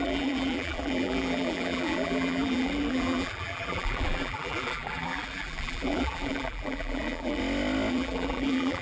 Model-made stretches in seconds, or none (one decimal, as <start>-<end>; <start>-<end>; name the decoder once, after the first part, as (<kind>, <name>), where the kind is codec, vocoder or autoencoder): 0.0-7.4 (vocoder, BigVGAN v2); 7.9-8.8

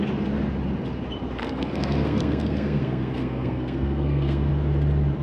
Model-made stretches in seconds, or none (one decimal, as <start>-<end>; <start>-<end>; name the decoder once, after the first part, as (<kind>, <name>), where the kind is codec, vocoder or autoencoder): 1.4-4.5 (codec, SNAC)

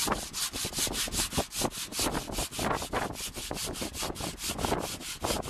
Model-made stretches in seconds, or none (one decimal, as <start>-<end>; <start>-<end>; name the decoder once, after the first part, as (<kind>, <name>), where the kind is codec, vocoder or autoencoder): 0.0-0.7 (vocoder, BigVGAN v2)

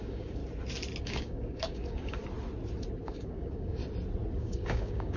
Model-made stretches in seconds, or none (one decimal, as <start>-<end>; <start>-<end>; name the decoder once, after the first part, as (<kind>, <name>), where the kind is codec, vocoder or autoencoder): 0.0-0.4 (codec, DAC); 1.0-2.2; 3.0-3.8; 4.4-5.2

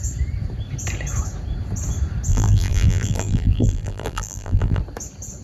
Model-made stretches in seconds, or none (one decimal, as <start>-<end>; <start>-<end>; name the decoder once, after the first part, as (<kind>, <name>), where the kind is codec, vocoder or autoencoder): 2.3-4.8 (vocoder, BigVGAN v2)

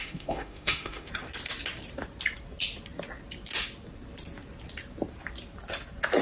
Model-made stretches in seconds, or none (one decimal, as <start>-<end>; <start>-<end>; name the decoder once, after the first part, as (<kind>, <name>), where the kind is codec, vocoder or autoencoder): 0.0-1.1 (autoencoder, DAC-VAE)

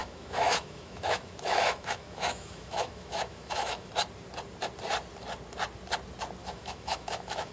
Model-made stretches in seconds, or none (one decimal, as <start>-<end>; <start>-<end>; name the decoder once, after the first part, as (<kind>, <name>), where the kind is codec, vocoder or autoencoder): 0.0-3.9 (autoencoder, DAC-VAE); 6.4-7.5